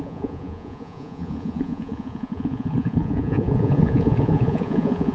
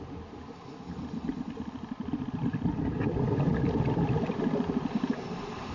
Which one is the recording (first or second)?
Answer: second